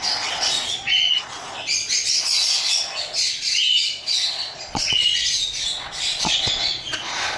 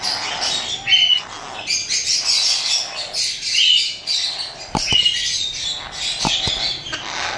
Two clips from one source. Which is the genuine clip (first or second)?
second